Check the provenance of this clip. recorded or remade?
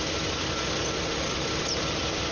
recorded